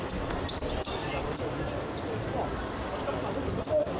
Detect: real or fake real